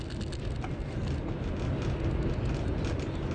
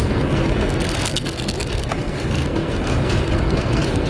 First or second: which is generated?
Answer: second